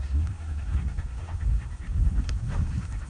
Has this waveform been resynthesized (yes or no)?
yes